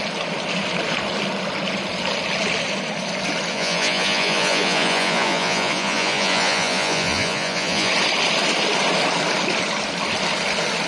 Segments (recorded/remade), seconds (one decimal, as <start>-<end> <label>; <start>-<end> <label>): 0.0-3.5 recorded; 3.5-7.9 remade; 7.9-10.9 recorded

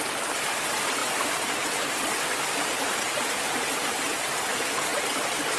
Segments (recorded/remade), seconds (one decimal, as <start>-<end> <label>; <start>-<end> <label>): 0.0-5.6 recorded

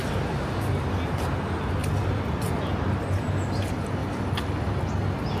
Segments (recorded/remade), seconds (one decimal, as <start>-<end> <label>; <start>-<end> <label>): 0.0-5.4 recorded

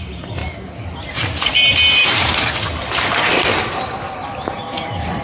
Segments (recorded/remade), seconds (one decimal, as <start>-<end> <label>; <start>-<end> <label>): 0.0-5.2 recorded

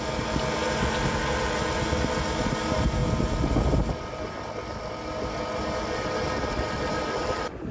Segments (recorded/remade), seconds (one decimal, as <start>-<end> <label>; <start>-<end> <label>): 0.0-7.7 recorded

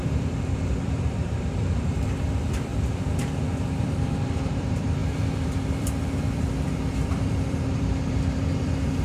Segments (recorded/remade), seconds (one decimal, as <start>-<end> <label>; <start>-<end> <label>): 0.0-9.0 remade